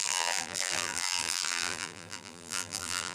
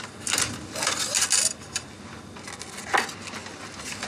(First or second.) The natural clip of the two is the second